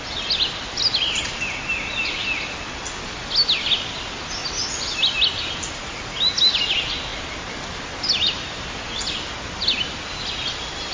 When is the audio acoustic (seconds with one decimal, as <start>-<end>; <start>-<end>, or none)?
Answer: 0.0-10.9